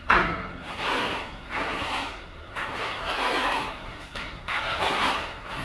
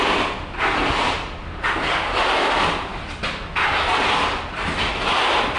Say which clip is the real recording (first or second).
second